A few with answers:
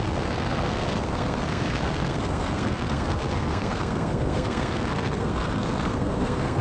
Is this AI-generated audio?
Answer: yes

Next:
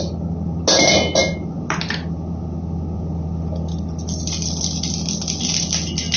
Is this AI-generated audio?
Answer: no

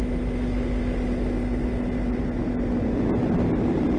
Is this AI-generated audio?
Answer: no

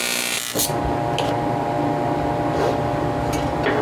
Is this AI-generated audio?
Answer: no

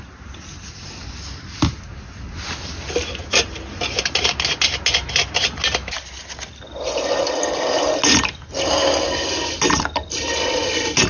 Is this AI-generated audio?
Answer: no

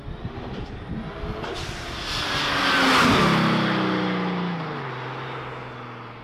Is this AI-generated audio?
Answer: no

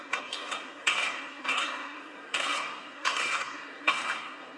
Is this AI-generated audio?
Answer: yes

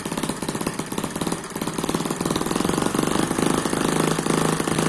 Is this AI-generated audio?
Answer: no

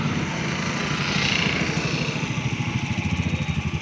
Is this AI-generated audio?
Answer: no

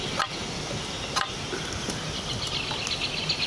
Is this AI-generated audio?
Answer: no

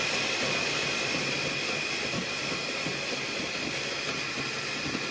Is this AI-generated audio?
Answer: no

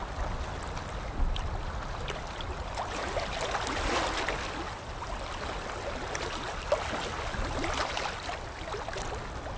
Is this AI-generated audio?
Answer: no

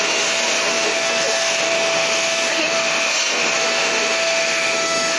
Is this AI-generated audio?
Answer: yes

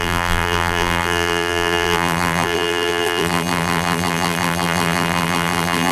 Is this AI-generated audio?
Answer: yes